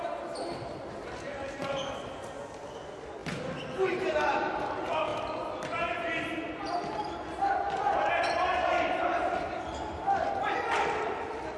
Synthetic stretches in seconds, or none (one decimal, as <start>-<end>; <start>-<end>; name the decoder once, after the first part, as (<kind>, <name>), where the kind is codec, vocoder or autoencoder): none